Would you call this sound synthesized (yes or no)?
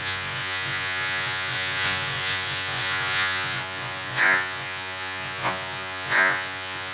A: yes